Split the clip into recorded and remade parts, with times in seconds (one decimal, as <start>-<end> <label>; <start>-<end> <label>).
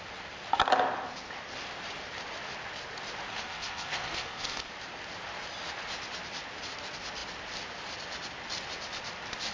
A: 0.0-3.3 recorded; 3.3-4.7 remade; 4.7-9.5 recorded